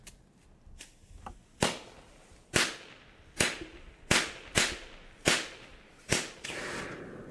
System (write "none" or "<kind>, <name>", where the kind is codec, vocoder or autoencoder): none